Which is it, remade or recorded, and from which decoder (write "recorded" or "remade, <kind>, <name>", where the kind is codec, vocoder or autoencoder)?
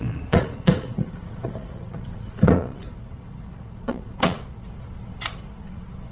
remade, vocoder, Vocos